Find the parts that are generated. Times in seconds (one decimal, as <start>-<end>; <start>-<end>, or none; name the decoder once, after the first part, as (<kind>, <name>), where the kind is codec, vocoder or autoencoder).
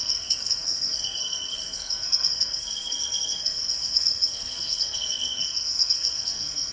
0.0-6.7 (codec, SNAC)